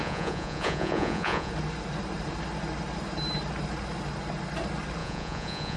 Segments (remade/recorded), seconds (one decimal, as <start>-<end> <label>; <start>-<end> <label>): 0.0-1.5 remade; 1.5-5.0 recorded; 5.0-5.8 remade